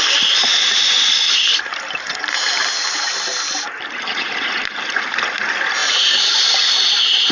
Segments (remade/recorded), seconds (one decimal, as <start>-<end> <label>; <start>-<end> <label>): 0.0-0.5 recorded; 0.5-1.1 remade; 1.1-4.1 recorded; 4.1-4.6 remade; 4.6-7.3 recorded